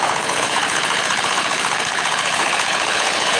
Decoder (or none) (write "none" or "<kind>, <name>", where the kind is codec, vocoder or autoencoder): codec, HILCodec